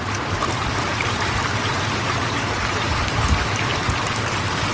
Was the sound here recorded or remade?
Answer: recorded